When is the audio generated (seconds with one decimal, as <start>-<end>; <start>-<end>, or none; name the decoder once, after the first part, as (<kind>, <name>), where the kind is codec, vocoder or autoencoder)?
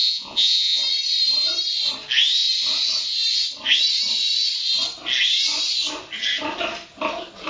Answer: 0.0-0.8 (vocoder, Vocos)